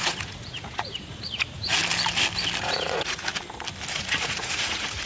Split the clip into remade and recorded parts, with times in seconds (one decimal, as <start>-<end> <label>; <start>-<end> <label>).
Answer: 0.0-1.8 remade; 1.8-2.6 recorded; 2.6-3.3 remade; 3.3-3.9 recorded; 3.9-5.1 remade